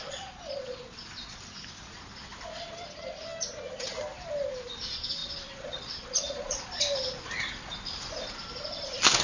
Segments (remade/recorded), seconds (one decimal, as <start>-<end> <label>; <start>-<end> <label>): 0.0-1.4 remade; 1.4-5.2 recorded; 5.2-6.8 remade; 6.8-9.2 recorded